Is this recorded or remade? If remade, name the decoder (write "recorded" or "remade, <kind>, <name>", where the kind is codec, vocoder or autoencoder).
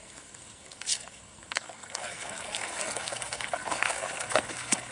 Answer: remade, codec, SNAC